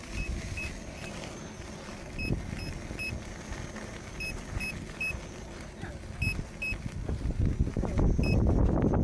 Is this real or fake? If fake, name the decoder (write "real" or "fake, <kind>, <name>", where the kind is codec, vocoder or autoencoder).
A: real